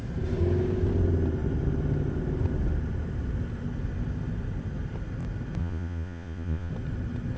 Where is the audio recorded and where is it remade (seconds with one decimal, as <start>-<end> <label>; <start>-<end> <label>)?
0.0-5.6 recorded; 5.6-6.7 remade; 6.7-7.4 recorded